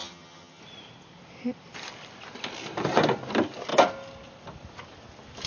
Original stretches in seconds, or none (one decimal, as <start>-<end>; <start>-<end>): 0.6-5.5